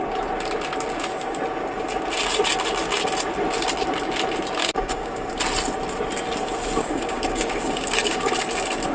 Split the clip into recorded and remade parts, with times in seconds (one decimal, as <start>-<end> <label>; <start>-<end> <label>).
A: 0.0-4.6 recorded; 4.6-5.3 remade; 5.3-6.8 recorded; 6.8-8.3 remade; 8.3-8.9 recorded